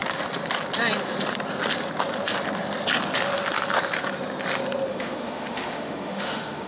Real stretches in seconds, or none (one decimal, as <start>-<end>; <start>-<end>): 0.0-4.9